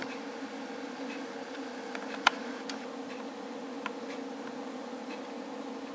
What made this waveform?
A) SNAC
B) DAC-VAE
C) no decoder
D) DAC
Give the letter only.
C